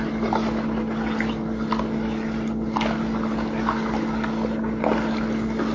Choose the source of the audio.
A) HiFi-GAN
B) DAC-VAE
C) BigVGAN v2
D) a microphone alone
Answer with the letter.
D